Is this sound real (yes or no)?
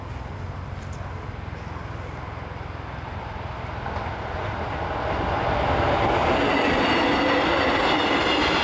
yes